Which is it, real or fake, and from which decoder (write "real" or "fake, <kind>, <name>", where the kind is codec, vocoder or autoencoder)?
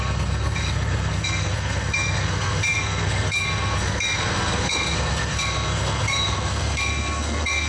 fake, codec, SNAC